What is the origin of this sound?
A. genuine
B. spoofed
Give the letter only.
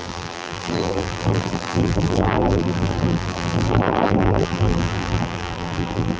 B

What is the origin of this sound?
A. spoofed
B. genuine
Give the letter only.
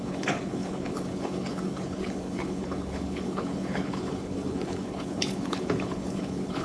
A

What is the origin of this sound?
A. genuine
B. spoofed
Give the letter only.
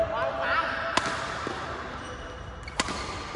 A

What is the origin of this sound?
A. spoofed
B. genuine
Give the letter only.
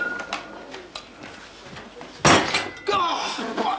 B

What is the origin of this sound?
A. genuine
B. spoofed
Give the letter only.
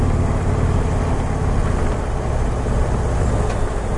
A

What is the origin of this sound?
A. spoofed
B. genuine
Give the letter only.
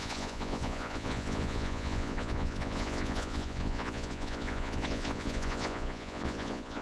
A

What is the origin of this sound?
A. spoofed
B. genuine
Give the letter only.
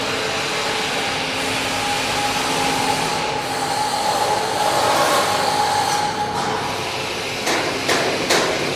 B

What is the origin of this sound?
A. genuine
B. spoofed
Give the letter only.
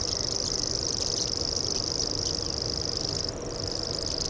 A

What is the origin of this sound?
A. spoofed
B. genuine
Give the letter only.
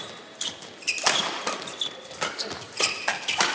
B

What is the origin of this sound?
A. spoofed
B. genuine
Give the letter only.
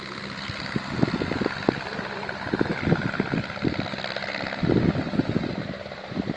B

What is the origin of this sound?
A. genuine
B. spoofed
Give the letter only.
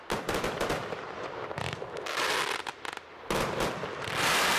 A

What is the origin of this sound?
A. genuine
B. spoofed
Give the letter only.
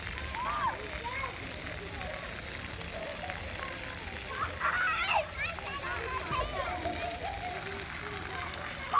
A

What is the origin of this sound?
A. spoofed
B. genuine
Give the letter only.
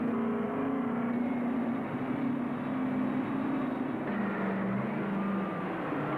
B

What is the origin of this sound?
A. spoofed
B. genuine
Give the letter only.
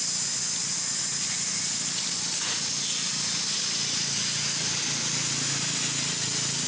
B